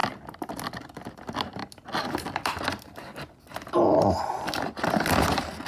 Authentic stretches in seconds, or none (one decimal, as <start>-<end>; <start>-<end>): 0.0-5.7